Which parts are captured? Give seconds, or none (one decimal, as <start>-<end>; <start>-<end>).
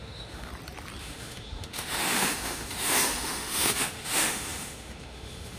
0.5-1.0